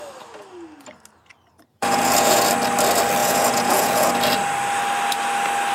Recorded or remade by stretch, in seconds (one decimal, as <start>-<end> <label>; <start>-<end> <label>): 0.0-1.7 recorded; 1.7-2.4 remade; 2.4-3.2 recorded; 3.2-4.1 remade; 4.1-5.7 recorded